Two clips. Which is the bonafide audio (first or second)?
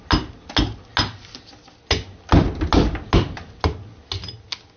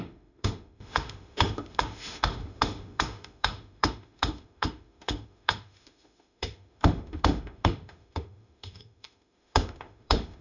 first